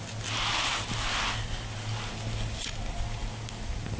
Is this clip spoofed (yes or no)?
no